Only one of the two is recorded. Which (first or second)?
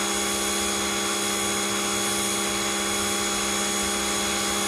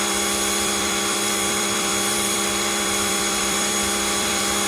first